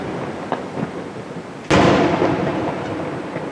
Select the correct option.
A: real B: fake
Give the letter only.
A